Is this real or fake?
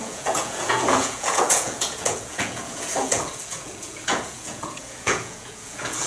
fake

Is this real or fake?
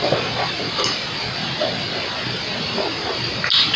real